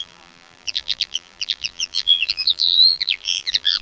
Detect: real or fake fake